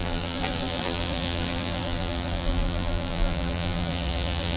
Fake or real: fake